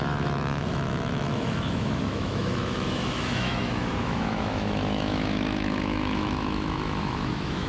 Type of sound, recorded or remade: remade